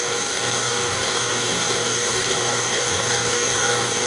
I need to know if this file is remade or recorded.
remade